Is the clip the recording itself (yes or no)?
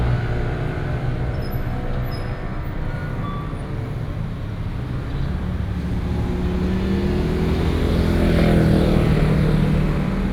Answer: yes